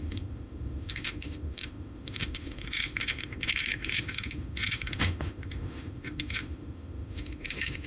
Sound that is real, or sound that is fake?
fake